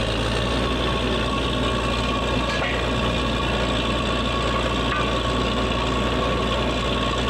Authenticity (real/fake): real